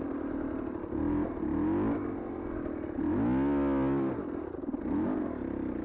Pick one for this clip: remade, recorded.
recorded